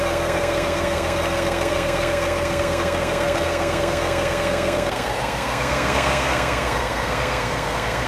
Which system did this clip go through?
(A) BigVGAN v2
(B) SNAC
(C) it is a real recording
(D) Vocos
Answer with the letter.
B